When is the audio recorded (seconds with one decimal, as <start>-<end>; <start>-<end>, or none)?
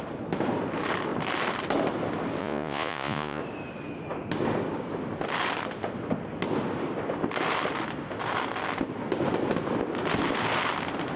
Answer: 0.0-2.4; 3.4-11.2